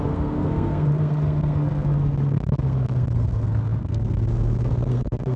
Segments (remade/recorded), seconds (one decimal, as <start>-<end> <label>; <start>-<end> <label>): 0.0-5.4 remade